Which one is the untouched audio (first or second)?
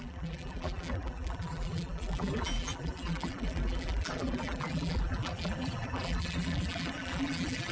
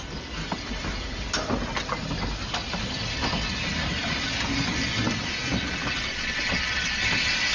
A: second